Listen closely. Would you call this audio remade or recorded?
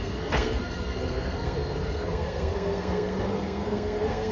remade